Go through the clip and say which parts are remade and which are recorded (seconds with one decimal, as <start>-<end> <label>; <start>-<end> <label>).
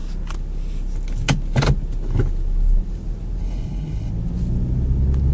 0.0-3.4 recorded; 3.4-4.1 remade; 4.1-5.3 recorded